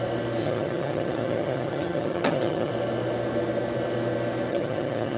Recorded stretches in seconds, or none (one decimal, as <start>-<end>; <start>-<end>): 0.0-0.4; 2.7-4.5

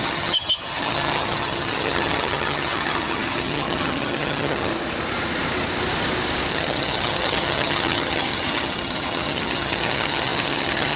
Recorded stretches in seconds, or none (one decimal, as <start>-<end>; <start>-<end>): 4.7-6.5

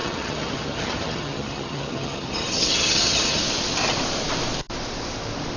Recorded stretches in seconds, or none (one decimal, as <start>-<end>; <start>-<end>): 3.4-5.6

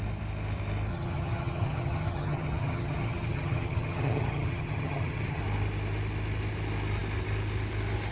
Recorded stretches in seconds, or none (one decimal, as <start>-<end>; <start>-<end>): 0.0-0.9; 5.4-8.1